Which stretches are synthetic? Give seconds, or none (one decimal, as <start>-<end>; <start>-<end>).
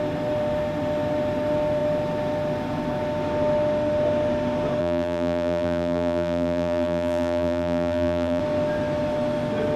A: 4.8-8.4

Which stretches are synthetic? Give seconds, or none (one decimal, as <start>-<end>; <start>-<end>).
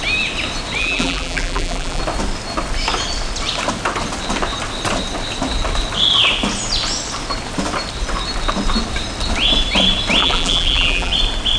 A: 0.8-2.0; 10.2-11.1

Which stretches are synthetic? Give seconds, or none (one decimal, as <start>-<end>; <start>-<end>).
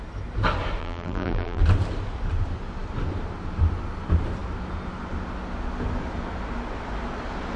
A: 0.8-1.6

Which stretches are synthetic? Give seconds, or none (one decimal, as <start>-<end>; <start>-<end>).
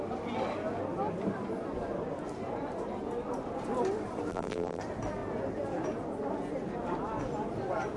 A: 4.3-4.8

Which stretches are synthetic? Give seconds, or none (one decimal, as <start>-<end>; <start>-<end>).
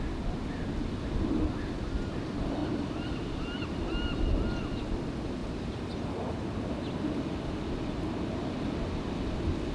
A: 2.6-4.8; 5.4-6.8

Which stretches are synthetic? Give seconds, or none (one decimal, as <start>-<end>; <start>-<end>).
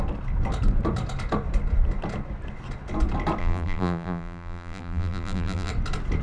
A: 3.4-5.7